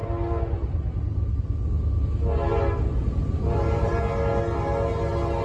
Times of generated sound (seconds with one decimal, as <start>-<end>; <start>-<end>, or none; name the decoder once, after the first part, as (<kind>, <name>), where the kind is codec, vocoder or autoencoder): 2.8-3.9 (vocoder, BigVGAN v2)